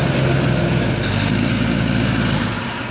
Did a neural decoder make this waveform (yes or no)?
no